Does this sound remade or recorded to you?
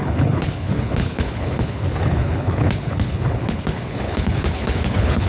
remade